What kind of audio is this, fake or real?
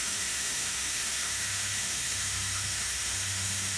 fake